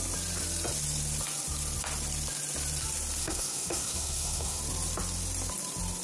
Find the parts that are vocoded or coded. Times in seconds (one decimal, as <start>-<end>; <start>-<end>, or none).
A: 3.2-4.6

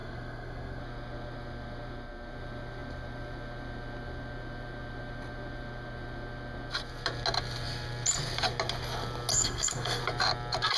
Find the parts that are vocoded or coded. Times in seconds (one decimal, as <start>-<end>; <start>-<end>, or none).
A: 0.0-0.8; 9.3-10.0

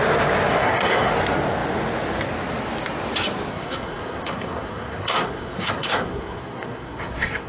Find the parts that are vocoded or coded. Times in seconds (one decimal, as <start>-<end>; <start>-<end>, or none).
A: 0.5-1.1; 3.5-7.5

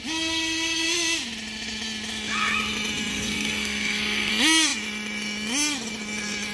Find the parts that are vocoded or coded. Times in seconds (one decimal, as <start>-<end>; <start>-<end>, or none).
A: 3.1-4.3

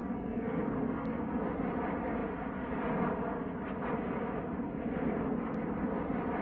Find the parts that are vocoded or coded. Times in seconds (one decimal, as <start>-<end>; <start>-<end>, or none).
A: 0.0-1.4

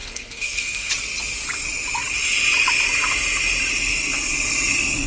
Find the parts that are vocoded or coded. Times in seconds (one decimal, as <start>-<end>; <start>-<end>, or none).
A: 0.0-0.9